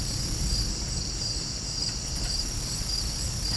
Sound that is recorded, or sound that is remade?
recorded